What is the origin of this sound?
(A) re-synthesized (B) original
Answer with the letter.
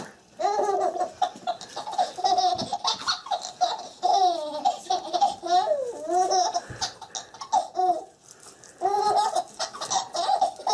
B